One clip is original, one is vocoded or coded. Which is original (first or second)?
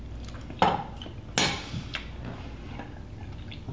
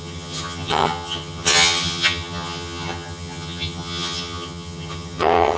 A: first